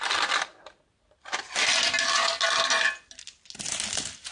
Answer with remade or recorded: recorded